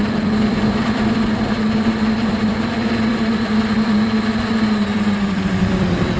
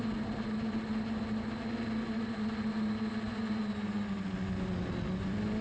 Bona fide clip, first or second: second